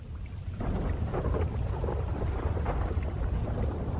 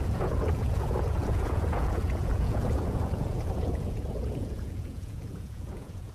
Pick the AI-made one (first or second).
second